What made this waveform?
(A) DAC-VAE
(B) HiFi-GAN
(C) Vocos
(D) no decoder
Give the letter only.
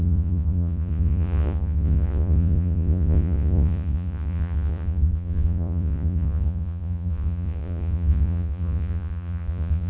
C